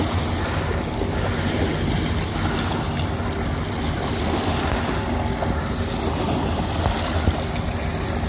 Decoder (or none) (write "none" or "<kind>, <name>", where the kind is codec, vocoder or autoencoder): none